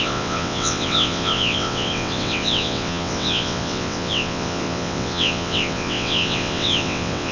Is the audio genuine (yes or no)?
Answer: no